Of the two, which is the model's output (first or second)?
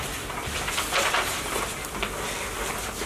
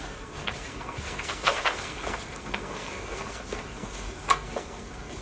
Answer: second